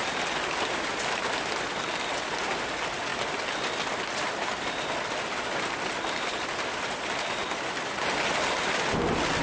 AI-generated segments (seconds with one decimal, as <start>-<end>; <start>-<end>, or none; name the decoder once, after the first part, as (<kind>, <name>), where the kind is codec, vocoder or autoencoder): none